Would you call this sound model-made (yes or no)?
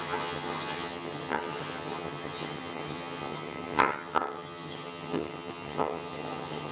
yes